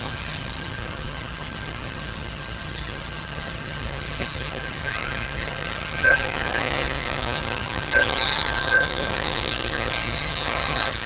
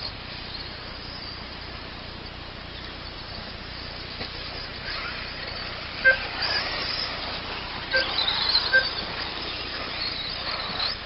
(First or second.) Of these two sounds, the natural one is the second